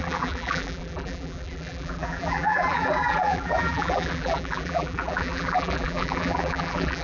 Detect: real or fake fake